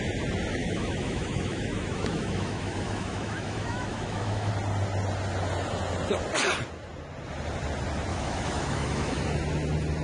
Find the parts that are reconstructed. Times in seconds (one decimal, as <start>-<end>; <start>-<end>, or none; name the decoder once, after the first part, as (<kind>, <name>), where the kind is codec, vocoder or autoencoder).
0.6-4.5 (autoencoder, DAC-VAE); 8.1-9.2